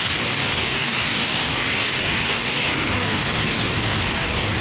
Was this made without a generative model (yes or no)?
no